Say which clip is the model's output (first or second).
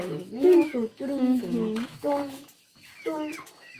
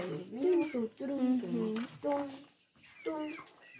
first